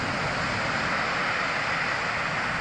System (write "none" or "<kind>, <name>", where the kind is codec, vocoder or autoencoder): none